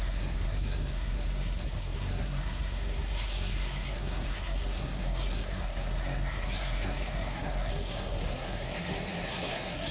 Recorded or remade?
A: remade